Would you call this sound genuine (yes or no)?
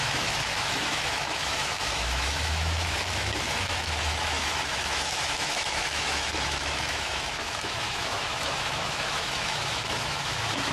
no